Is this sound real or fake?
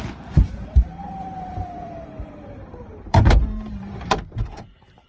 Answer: fake